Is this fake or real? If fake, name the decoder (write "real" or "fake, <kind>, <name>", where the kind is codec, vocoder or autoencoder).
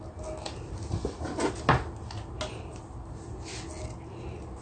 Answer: real